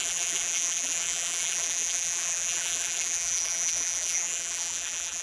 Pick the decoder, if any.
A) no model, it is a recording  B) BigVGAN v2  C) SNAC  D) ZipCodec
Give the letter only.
B